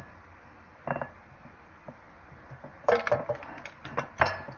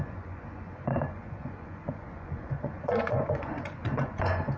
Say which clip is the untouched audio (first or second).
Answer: first